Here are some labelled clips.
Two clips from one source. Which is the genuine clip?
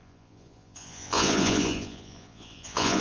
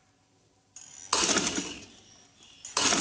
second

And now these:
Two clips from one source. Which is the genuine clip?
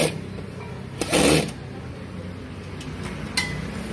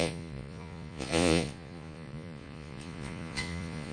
first